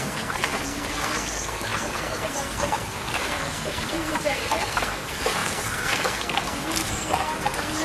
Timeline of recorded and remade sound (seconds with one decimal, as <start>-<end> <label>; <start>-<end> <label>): 0.0-7.8 remade